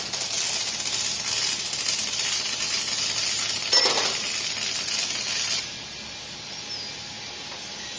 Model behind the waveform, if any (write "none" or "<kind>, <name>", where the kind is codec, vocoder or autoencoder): none